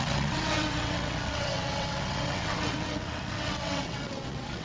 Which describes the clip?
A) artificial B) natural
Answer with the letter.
A